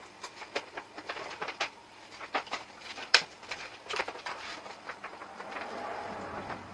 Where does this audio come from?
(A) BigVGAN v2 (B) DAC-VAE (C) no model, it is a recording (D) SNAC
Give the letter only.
A